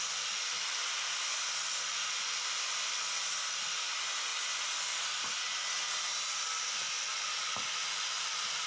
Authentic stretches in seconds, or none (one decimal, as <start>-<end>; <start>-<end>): 0.0-8.7